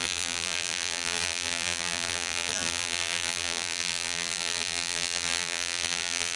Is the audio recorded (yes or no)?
no